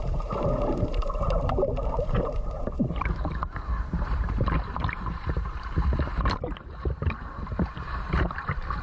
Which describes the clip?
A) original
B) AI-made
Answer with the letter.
B